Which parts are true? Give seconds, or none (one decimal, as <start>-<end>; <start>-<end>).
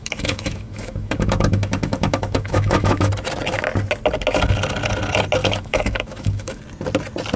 3.1-5.4; 6.6-7.4